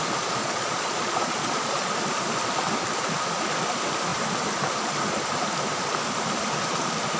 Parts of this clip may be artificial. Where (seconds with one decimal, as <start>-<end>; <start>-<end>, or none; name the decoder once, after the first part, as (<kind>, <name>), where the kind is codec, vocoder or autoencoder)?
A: 0.4-1.9 (vocoder, Vocos)